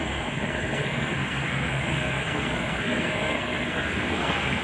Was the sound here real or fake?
fake